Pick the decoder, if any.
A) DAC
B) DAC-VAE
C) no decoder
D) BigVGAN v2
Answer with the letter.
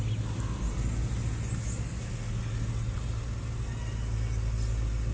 C